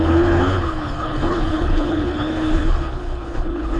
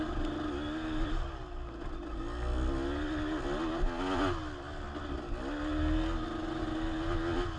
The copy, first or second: first